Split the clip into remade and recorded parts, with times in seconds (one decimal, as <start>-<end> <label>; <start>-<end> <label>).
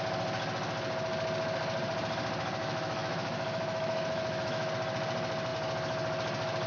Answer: 0.0-2.6 recorded; 2.6-4.7 remade; 4.7-6.7 recorded